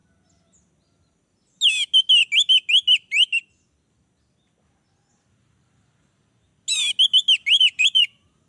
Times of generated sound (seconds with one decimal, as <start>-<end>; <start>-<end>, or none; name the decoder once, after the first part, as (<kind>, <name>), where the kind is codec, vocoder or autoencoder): 5.1-6.5 (vocoder, BigVGAN v2); 7.6-8.5